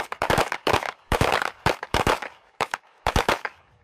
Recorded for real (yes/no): no